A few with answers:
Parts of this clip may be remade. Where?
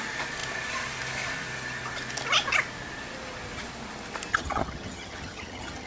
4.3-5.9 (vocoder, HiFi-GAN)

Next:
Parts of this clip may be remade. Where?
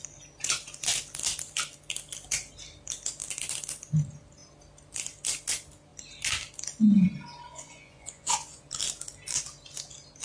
7.5-8.6 (vocoder, Vocos)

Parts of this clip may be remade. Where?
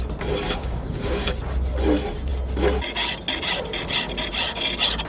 0.6-1.4 (codec, DAC)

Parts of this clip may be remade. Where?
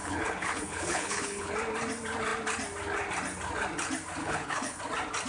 0.0-1.5 (codec, HILCodec); 4.2-4.8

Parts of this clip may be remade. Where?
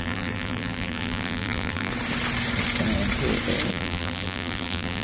0.0-1.9 (vocoder, BigVGAN v2); 3.7-5.0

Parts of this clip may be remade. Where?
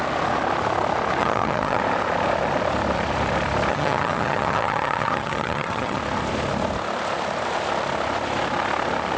1.2-1.8 (vocoder, HiFi-GAN); 3.7-6.0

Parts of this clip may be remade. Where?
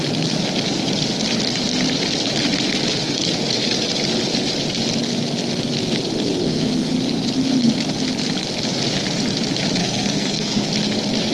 6.4-6.9 (codec, SNAC); 9.8-10.7